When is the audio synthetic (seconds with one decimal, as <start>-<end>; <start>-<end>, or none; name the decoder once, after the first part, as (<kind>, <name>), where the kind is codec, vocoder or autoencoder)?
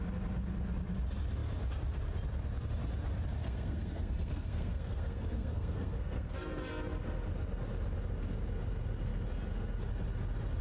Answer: 3.4-6.7 (codec, SNAC)